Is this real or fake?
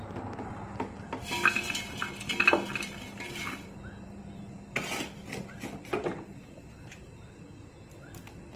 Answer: real